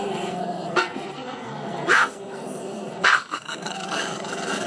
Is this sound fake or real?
fake